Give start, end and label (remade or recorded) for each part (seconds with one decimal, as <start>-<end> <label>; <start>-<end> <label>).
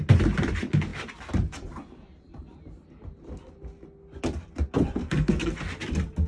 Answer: 0.0-5.0 recorded; 5.0-5.5 remade; 5.5-6.3 recorded